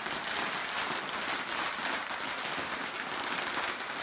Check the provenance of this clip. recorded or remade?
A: recorded